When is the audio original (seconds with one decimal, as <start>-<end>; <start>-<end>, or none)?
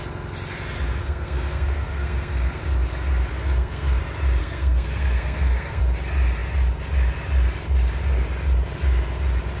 0.0-1.0; 2.6-3.3; 4.0-4.4; 5.8-9.6